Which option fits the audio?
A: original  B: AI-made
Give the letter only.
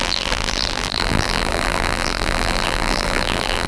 B